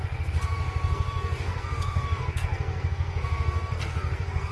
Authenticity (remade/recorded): remade